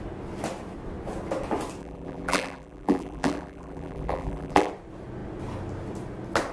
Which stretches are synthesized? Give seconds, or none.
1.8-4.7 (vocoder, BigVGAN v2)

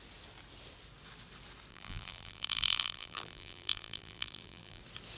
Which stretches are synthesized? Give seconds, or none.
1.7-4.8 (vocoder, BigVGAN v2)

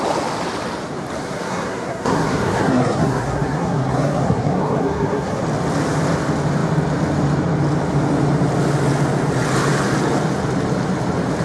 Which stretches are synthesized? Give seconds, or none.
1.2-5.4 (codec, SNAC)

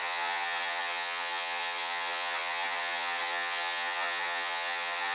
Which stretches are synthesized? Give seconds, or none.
0.0-5.1 (vocoder, HiFi-GAN)

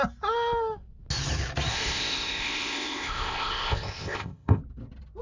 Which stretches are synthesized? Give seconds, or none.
1.7-4.6 (codec, ZipCodec)

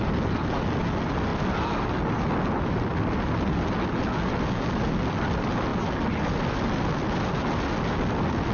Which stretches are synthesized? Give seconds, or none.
none

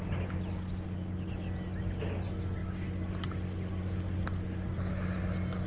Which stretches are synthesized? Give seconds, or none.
none